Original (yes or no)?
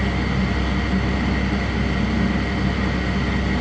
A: yes